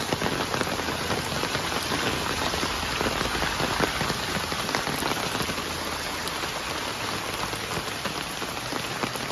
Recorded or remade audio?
recorded